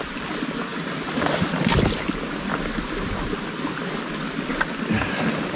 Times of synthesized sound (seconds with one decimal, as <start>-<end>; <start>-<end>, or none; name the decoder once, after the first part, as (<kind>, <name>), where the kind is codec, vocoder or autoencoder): none